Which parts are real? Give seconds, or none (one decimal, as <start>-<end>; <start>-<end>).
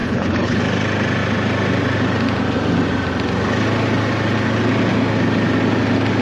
0.6-6.2